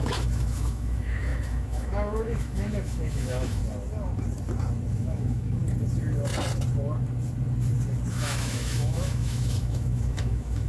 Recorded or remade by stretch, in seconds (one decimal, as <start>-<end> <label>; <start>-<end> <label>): 0.0-3.6 remade; 3.6-4.9 recorded; 4.9-5.6 remade; 5.6-8.1 recorded; 8.1-10.7 remade